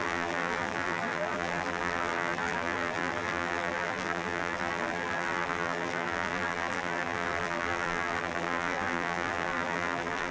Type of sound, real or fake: fake